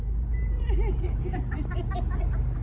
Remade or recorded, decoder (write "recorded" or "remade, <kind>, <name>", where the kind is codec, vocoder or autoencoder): remade, vocoder, BigVGAN v2